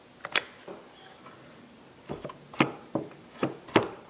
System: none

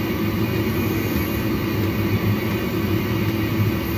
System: none